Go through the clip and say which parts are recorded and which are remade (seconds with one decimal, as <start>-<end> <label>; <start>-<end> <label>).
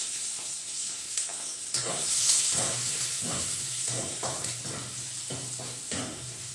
0.0-4.6 remade; 4.6-5.6 recorded; 5.6-6.5 remade